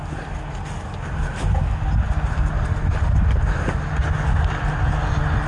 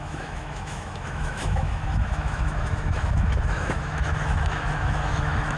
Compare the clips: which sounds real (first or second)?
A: first